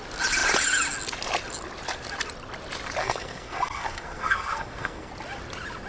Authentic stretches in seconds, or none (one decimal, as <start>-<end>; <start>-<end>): 0.0-3.0; 5.1-5.9